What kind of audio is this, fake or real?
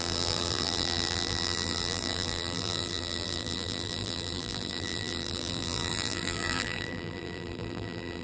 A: fake